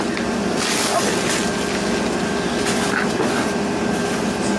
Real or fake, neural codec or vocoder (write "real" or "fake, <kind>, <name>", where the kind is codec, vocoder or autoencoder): real